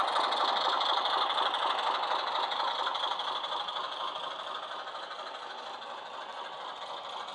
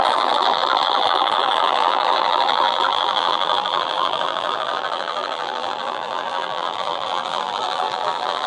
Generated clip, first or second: second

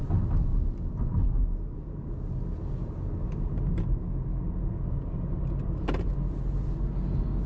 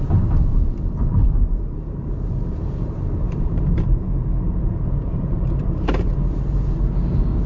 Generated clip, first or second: second